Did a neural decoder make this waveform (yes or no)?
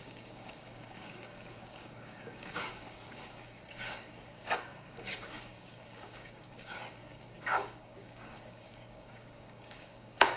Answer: yes